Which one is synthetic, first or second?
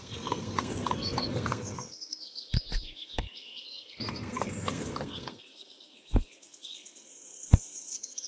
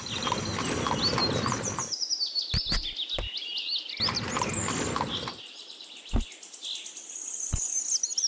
first